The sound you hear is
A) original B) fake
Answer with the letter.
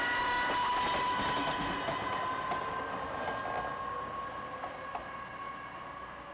A